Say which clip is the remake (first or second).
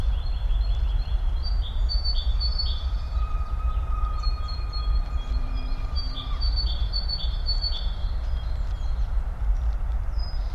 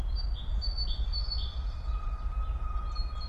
first